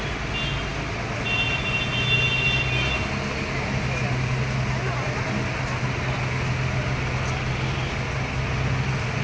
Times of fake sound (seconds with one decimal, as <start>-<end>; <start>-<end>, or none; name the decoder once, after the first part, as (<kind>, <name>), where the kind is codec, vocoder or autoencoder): none